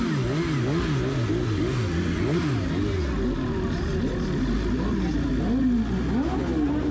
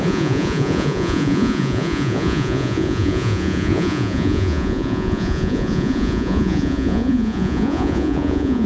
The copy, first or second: second